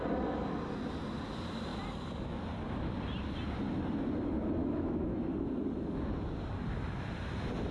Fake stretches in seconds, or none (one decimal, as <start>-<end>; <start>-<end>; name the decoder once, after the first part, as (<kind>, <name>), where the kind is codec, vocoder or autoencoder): 4.6-5.3 (autoencoder, DAC-VAE)